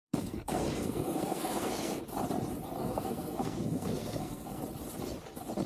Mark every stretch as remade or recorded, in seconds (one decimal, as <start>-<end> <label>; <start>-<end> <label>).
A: 0.0-2.0 remade; 2.0-2.8 recorded; 2.8-4.6 remade; 4.6-5.7 recorded